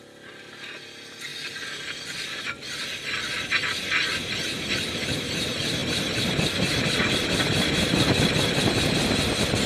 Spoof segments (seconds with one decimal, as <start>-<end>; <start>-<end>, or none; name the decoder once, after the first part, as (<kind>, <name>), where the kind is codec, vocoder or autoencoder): none